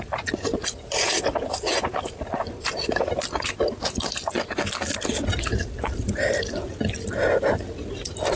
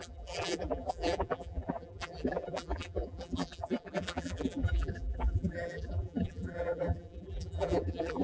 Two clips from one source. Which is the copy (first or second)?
second